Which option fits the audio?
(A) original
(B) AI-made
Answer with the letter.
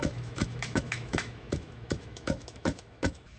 B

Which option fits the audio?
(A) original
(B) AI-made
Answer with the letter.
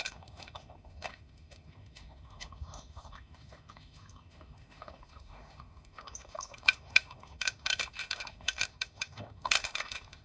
B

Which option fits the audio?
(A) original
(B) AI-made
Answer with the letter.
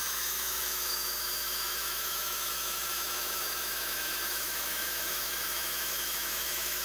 B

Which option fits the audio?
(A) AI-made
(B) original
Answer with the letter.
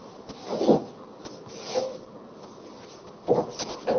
B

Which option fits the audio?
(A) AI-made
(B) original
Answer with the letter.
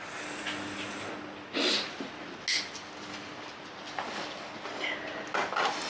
B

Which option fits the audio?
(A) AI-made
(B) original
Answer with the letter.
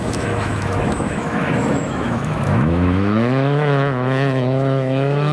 A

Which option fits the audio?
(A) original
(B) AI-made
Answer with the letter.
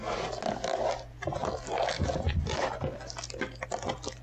A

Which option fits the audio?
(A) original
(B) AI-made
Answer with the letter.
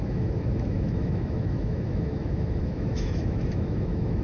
B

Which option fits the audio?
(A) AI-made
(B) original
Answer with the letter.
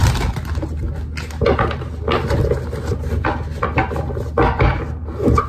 B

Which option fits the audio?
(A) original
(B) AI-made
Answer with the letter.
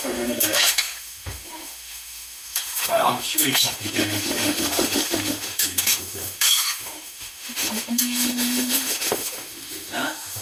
B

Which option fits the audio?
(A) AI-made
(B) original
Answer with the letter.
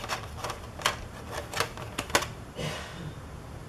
B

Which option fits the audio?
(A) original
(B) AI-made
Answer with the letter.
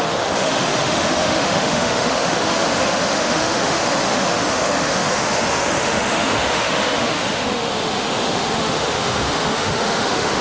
B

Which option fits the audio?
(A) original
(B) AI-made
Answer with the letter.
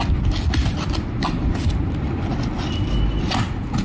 A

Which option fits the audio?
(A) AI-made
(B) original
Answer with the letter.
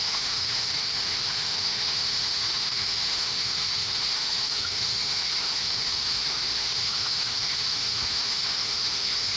A